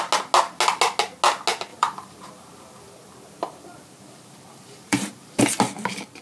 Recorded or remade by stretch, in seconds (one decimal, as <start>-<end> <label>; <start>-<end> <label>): 0.0-1.7 recorded; 1.7-5.4 remade; 5.4-6.2 recorded